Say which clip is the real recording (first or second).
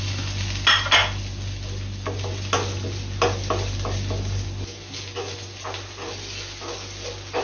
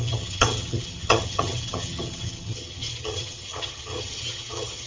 first